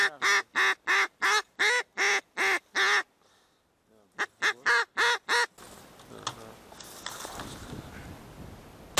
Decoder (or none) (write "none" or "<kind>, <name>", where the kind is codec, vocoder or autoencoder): none